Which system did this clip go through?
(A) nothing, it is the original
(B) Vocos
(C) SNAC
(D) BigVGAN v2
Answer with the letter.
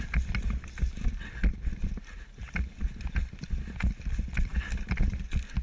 A